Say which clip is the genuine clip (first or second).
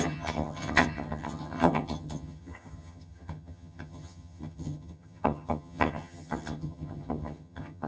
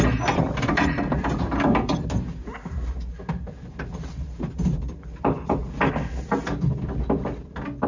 second